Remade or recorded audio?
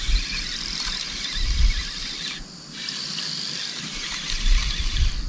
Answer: recorded